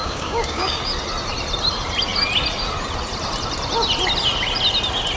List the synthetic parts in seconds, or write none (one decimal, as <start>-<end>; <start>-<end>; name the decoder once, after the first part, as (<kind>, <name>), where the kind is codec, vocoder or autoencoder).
0.0-0.8 (codec, DAC)